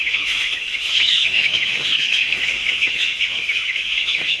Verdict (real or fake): fake